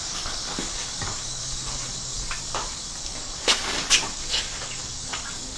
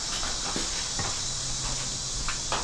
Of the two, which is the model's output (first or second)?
first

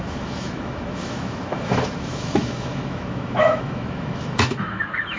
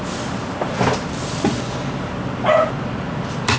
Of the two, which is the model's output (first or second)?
first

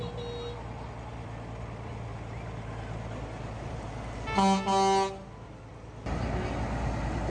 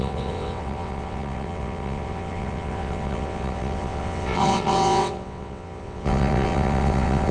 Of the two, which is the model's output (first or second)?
second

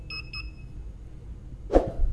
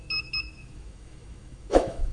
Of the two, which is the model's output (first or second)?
second